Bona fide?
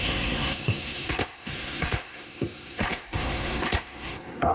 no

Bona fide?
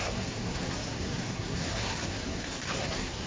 no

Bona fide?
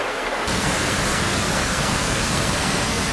no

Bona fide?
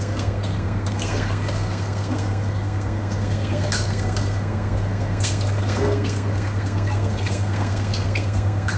no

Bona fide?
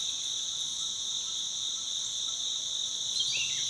yes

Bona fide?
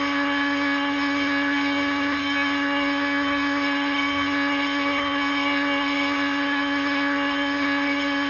no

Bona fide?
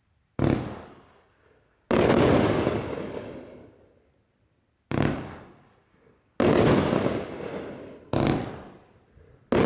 yes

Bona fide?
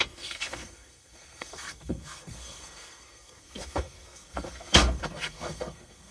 no